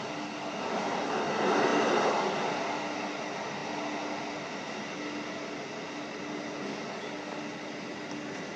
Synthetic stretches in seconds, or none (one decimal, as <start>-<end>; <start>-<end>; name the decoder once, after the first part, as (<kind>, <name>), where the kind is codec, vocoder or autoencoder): none